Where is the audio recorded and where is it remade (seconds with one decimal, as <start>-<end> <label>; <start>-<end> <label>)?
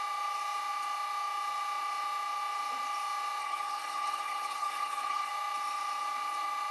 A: 0.0-3.4 recorded; 3.4-5.3 remade; 5.3-6.7 recorded